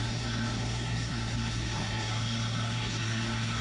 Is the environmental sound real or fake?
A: fake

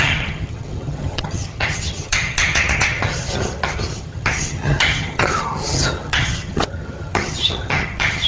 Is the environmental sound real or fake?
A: fake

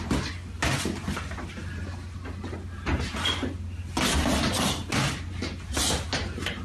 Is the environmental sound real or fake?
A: real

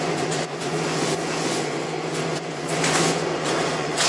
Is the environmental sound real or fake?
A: fake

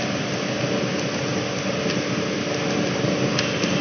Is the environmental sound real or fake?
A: real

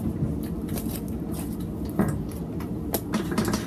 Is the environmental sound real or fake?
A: real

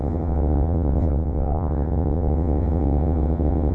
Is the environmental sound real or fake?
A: fake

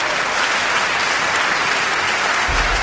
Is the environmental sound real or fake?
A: real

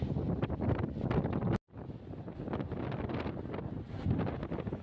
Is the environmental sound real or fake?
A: real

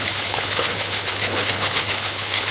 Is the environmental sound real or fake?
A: fake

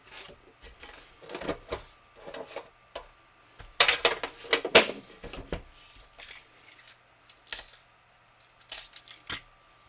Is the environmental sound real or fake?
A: real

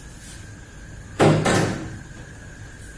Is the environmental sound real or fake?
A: real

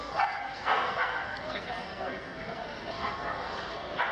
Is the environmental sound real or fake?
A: fake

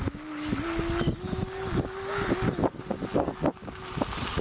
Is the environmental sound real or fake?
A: real